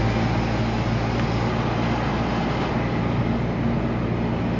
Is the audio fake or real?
real